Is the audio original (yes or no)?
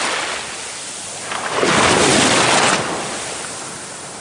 yes